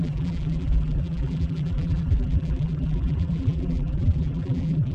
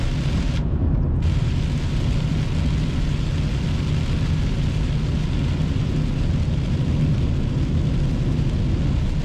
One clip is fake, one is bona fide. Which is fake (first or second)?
first